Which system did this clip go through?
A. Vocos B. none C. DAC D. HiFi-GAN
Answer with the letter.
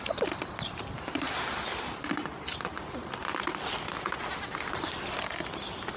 B